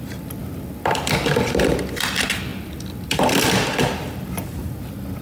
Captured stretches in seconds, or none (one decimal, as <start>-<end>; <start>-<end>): 0.0-5.2